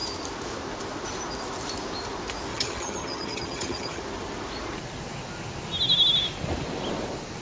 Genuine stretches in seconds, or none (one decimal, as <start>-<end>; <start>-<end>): 0.0-2.5; 4.0-7.4